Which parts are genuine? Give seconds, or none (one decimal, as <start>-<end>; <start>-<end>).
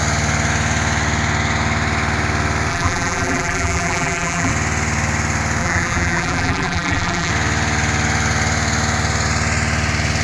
0.0-2.7; 4.5-5.6; 7.3-10.2